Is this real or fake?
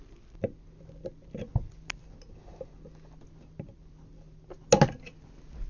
real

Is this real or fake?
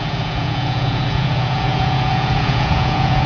fake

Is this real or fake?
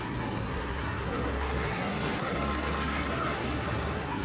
fake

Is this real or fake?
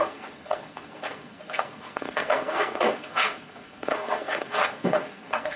fake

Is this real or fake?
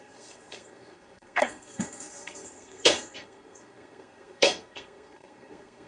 fake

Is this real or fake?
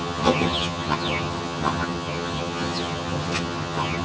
fake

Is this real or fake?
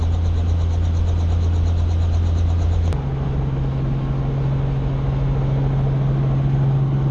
real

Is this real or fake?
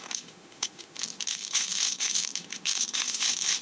fake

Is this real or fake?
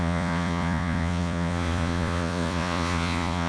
fake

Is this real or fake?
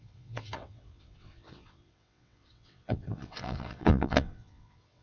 fake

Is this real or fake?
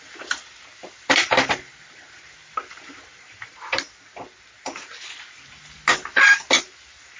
real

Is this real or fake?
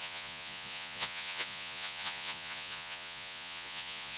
fake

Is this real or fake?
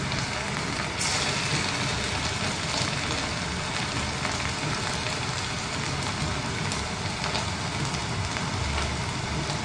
real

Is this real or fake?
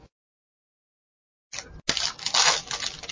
real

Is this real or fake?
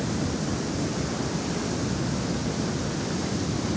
real